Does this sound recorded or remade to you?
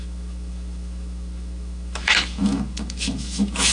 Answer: remade